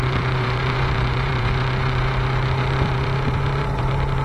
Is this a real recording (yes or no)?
no